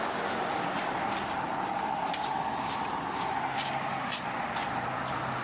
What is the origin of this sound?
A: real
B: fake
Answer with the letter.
A